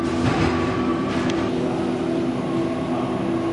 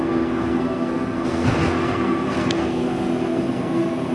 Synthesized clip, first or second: second